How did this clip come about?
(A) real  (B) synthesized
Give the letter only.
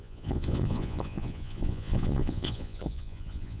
B